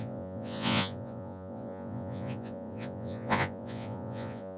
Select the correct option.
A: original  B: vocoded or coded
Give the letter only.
B